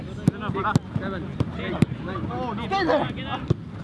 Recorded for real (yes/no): yes